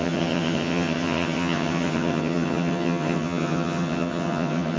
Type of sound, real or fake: fake